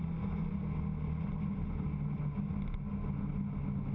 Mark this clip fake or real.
real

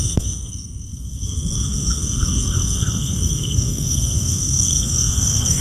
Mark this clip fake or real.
fake